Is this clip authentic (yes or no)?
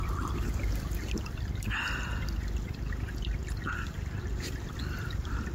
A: yes